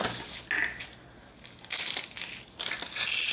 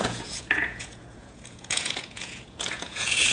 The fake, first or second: second